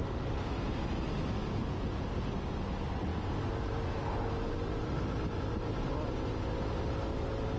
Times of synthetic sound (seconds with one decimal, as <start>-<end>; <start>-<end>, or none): 1.4-2.3